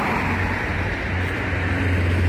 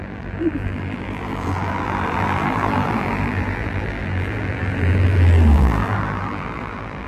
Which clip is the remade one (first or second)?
second